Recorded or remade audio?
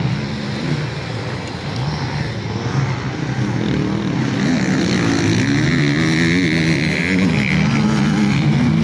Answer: recorded